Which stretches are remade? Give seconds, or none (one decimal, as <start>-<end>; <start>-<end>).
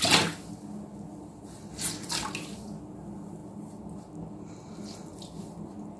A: none